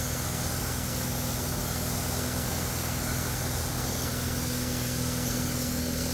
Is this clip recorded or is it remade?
remade